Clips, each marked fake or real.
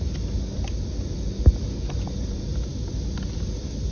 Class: real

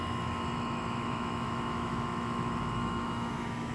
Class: fake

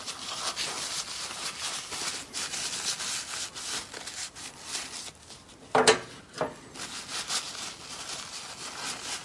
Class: real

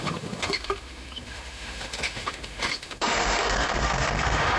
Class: fake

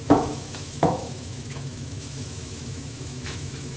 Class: fake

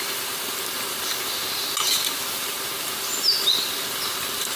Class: real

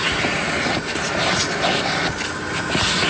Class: real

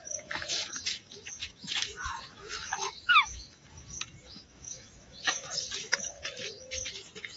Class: fake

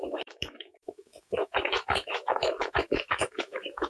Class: fake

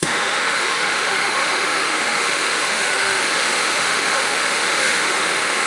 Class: fake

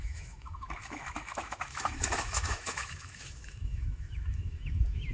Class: fake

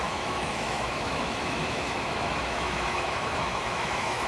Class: fake